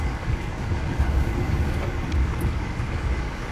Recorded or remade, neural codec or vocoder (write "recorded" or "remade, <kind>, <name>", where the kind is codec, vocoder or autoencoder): remade, codec, DAC